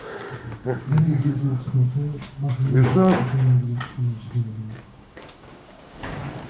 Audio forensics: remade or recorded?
remade